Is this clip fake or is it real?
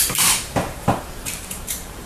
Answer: fake